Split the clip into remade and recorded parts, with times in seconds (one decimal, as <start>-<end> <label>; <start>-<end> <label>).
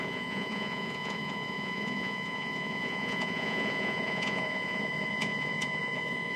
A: 0.0-6.4 remade